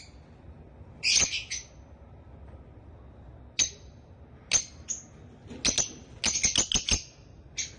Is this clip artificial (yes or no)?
no